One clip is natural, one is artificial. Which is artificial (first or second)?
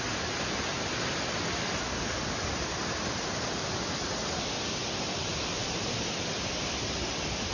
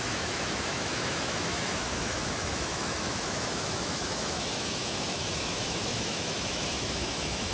second